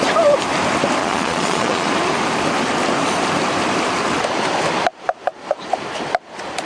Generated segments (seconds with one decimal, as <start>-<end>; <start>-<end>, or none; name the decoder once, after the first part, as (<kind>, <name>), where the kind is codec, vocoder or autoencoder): 1.0-1.9 (vocoder, Vocos)